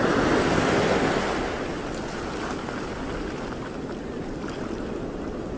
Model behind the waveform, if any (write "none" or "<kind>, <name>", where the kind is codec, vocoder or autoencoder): none